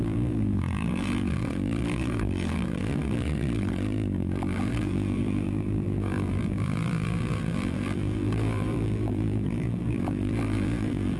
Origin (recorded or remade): remade